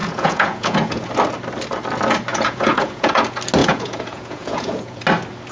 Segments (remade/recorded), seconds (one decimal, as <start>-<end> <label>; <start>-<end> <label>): 0.0-1.1 remade; 1.1-2.3 recorded; 2.3-3.2 remade; 3.2-3.6 recorded; 3.6-5.0 remade; 5.0-5.5 recorded